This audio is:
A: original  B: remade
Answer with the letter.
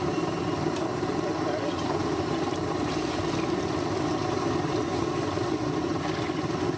B